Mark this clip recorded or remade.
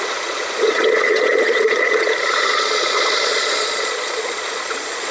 remade